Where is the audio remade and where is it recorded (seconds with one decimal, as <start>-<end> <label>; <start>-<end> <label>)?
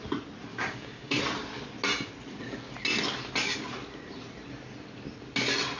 0.0-0.5 recorded; 0.5-1.2 remade; 1.2-5.8 recorded